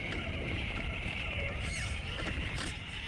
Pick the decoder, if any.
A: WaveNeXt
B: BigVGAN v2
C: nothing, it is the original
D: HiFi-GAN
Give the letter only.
B